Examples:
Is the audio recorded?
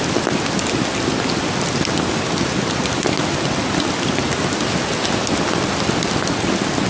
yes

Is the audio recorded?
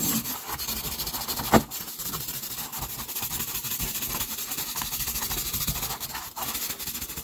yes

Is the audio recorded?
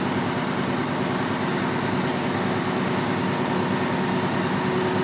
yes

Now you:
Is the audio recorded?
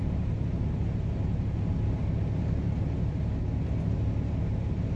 yes